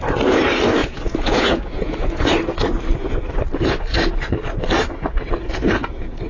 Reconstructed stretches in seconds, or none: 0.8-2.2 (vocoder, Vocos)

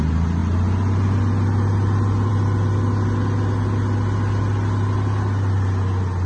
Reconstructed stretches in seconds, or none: none

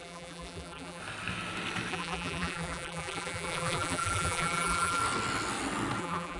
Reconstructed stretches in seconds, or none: 0.0-1.0 (vocoder, BigVGAN v2); 1.9-5.0; 6.0-6.4

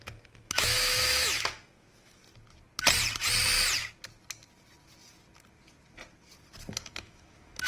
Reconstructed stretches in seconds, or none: 0.0-2.2 (autoencoder, DAC-VAE); 6.7-7.7

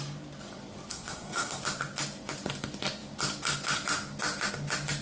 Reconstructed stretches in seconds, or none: 0.9-1.6 (codec, SNAC)

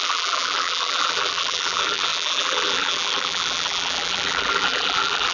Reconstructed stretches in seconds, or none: 0.0-5.3 (vocoder, BigVGAN v2)